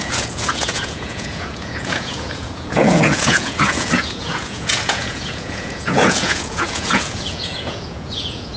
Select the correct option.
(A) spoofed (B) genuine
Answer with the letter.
A